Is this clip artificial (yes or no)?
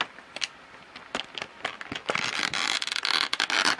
no